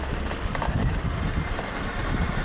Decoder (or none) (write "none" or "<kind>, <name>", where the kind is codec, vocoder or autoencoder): none